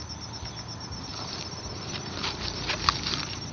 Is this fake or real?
real